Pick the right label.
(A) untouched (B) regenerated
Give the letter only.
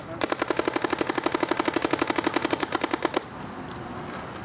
A